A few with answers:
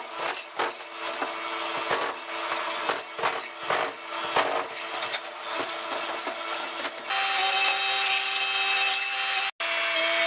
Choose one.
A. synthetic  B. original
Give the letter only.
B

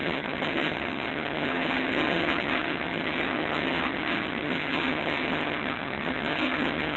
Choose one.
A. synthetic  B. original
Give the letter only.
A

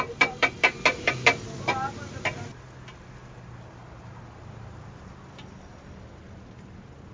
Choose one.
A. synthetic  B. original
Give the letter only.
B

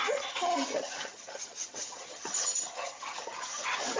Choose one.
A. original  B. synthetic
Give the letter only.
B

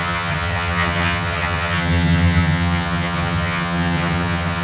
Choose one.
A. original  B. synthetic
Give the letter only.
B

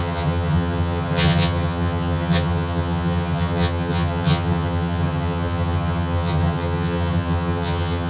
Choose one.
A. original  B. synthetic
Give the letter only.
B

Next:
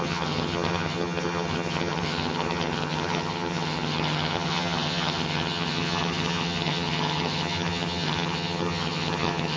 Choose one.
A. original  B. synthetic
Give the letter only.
B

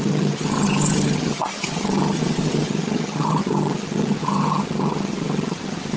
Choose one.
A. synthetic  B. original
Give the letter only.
A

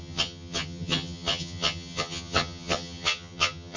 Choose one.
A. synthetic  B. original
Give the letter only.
A